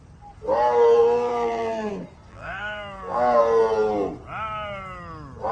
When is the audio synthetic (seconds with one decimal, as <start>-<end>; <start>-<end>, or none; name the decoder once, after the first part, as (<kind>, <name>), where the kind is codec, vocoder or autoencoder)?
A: 1.0-1.9 (vocoder, BigVGAN v2); 2.3-3.4